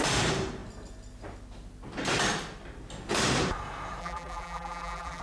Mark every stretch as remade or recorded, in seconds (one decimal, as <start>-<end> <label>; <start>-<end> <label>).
0.0-4.0 recorded; 4.0-5.2 remade